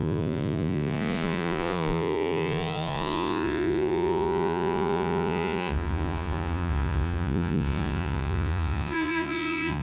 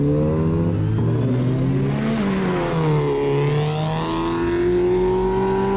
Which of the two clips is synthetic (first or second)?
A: first